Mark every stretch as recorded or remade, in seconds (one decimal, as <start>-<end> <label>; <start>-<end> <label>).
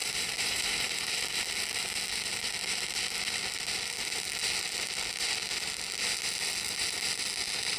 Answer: 0.0-1.1 remade; 1.1-7.8 recorded